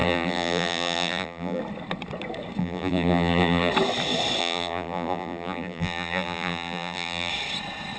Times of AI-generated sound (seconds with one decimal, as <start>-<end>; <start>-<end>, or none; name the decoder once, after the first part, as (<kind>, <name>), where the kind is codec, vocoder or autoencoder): 0.0-1.6 (vocoder, BigVGAN v2); 2.6-3.7; 4.4-7.3